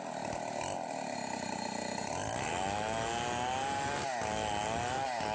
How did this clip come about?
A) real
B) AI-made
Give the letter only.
A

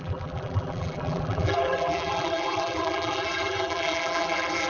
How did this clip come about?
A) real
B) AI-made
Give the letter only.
B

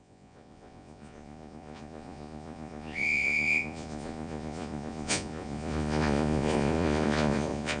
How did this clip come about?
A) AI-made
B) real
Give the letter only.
A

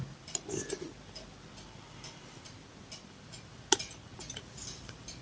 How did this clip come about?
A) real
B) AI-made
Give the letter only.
A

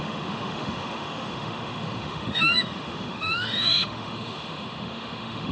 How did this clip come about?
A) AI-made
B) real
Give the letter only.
A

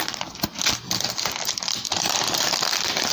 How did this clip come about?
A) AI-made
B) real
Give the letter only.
B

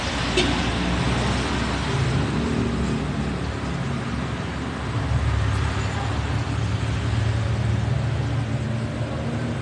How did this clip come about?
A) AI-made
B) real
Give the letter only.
B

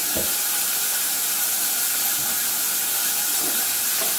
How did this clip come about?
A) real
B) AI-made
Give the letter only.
A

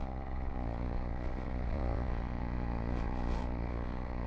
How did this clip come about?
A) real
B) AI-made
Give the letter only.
B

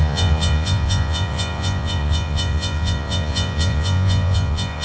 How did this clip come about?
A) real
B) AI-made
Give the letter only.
B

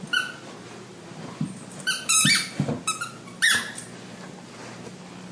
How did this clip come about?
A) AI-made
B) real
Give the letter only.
B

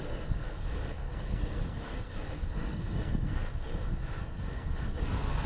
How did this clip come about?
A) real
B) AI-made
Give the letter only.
B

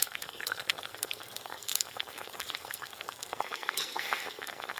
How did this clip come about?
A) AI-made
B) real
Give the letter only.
A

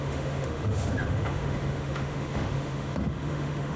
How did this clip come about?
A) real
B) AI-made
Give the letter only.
B